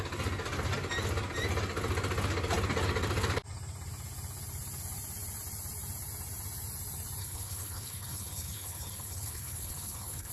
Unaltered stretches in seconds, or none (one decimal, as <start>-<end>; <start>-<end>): 0.0-7.2